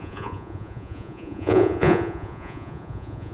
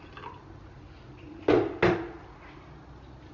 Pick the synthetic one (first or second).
first